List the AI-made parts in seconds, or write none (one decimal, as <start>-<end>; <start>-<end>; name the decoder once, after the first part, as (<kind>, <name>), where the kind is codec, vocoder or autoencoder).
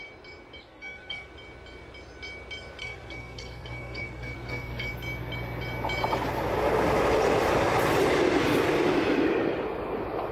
0.6-1.3 (codec, SNAC); 2.8-4.9